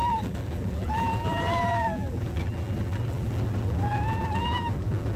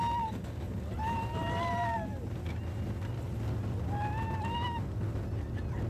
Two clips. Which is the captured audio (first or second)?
second